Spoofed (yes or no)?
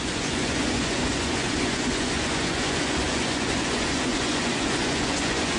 yes